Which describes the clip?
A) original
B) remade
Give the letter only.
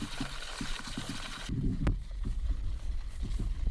A